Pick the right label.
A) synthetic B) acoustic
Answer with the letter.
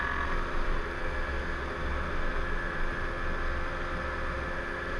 B